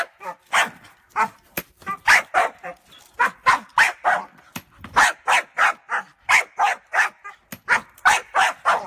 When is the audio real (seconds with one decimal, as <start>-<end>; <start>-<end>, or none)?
0.0-8.9